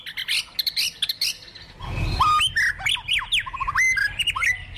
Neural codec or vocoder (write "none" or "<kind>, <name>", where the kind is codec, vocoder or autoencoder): none